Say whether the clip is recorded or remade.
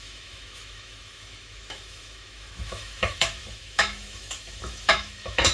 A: remade